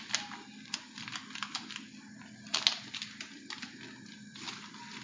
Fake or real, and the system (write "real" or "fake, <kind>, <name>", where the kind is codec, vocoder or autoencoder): real